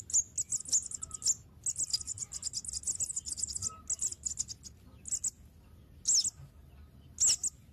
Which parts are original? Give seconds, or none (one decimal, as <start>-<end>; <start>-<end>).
0.0-7.7